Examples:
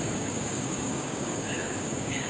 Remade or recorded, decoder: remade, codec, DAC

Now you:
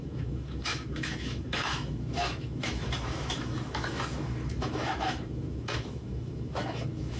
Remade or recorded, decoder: remade, autoencoder, DAC-VAE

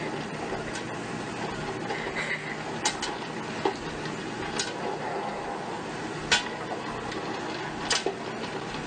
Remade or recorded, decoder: recorded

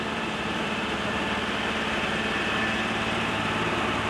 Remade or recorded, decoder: remade, vocoder, BigVGAN v2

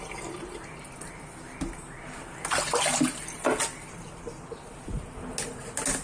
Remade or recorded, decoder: recorded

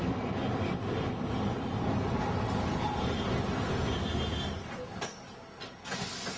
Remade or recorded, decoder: recorded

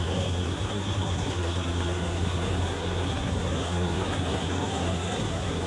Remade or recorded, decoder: remade, codec, SNAC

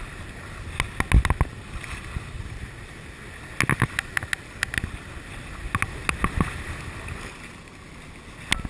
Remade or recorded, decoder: recorded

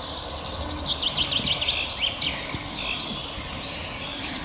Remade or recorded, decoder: recorded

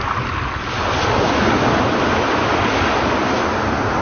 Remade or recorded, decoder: recorded